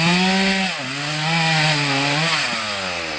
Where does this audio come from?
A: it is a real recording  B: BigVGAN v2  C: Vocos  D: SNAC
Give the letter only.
A